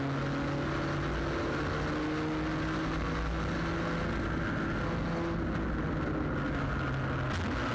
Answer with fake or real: real